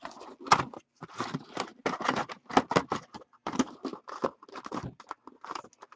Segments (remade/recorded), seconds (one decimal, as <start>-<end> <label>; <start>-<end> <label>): 0.0-6.0 recorded